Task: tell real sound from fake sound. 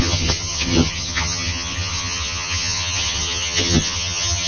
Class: fake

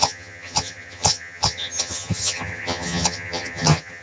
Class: fake